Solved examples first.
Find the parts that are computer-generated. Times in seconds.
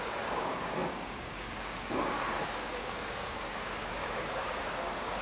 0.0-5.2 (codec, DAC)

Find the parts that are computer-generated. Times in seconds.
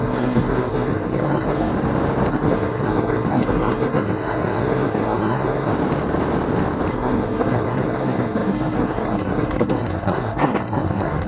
0.0-1.7 (codec, SNAC); 2.3-5.7; 6.9-11.3